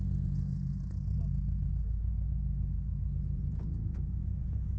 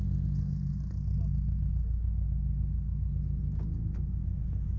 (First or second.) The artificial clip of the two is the first